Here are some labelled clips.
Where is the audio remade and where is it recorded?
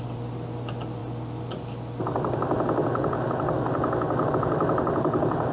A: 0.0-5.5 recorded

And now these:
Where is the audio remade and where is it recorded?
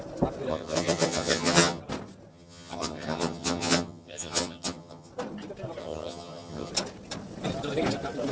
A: 0.0-0.5 recorded; 0.5-1.8 remade; 1.8-2.3 recorded; 2.3-5.1 remade; 5.1-5.8 recorded; 5.8-6.7 remade; 6.7-8.3 recorded